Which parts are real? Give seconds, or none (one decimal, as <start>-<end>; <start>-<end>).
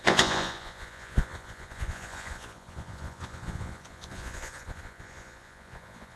none